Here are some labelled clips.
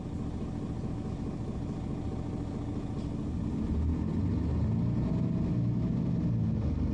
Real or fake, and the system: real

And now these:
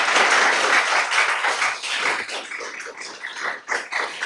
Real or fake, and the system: real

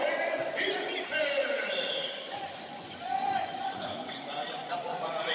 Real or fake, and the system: fake, vocoder, Vocos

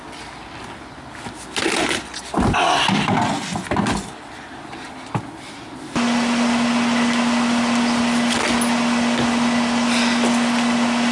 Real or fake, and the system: real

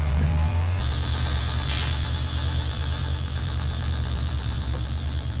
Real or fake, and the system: fake, vocoder, BigVGAN v2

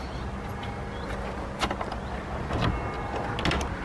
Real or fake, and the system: real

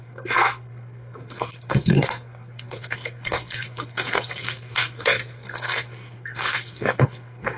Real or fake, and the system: fake, codec, SNAC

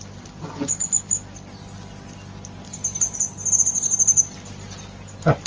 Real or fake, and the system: real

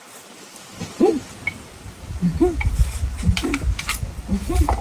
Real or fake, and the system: real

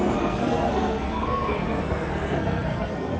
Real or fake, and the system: fake, codec, SNAC